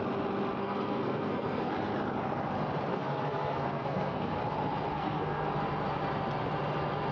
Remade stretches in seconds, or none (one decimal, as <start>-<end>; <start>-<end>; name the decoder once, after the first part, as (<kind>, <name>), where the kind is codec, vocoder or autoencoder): 0.6-1.7 (codec, SNAC); 2.9-4.4; 4.9-5.5